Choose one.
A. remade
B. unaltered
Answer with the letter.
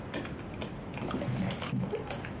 B